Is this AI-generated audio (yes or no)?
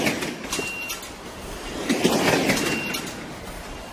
no